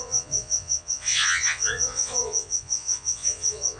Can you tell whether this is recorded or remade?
remade